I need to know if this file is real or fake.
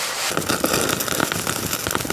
real